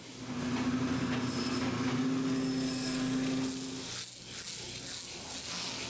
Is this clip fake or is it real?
real